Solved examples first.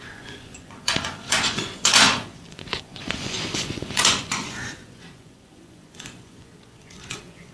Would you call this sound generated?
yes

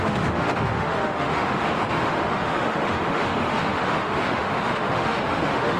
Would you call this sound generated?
yes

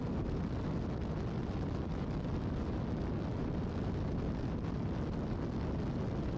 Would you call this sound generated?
no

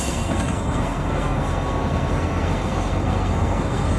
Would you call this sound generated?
yes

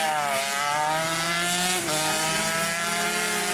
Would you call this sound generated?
no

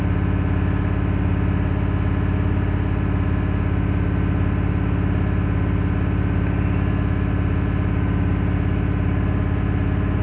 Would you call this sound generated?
no